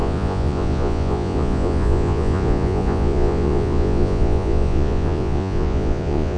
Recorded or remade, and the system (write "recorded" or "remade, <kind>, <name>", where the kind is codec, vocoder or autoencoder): remade, vocoder, Vocos